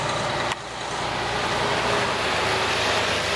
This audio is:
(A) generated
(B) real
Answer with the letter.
B